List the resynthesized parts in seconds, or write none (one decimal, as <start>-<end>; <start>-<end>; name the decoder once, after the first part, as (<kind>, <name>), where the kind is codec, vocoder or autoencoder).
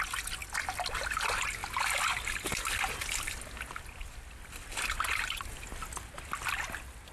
none